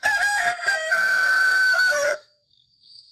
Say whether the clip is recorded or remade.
remade